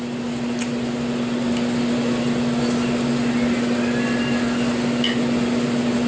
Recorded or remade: recorded